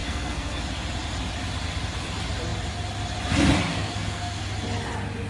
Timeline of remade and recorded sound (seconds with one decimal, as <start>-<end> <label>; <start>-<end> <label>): 0.0-0.6 remade; 0.6-3.7 recorded; 3.7-4.4 remade; 4.4-5.3 recorded